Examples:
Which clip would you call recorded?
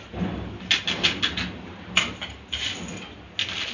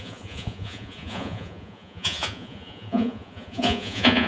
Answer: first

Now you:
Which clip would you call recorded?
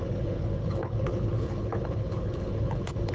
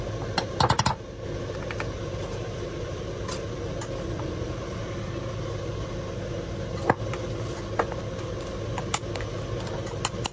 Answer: second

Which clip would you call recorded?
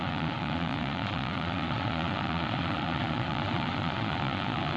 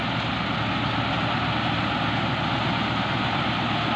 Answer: second